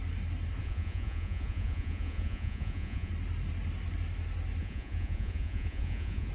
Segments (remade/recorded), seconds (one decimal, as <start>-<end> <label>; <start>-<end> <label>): 0.0-0.6 recorded; 0.6-3.1 remade; 3.1-4.6 recorded; 4.6-6.3 remade